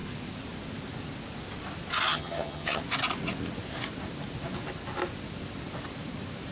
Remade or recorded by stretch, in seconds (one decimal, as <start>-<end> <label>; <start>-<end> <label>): 0.0-2.1 recorded; 2.1-2.8 remade; 2.8-6.5 recorded